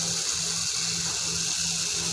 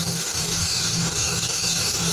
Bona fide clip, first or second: first